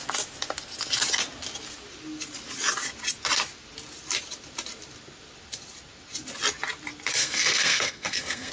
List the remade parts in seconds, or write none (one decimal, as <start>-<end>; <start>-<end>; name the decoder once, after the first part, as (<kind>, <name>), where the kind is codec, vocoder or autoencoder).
7.2-8.5 (codec, SNAC)